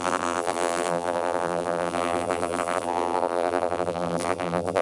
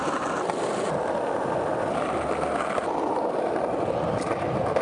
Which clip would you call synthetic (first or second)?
first